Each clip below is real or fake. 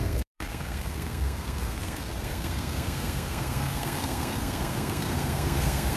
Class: fake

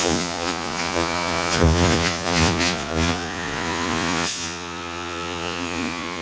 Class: fake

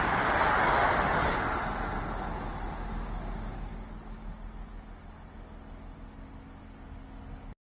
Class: real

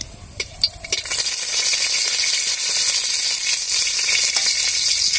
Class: real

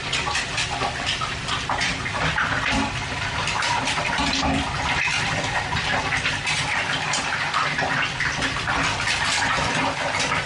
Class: fake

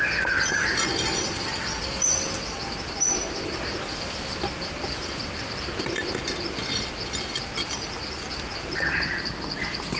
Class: real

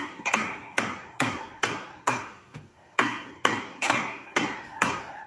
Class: fake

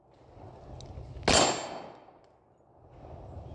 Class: real